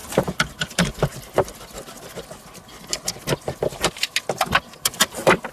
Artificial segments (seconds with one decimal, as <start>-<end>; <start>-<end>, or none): 0.0-2.1; 4.6-5.5